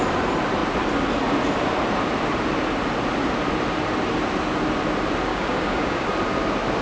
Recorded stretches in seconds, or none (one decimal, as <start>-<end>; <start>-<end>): 0.0-5.3; 6.1-6.8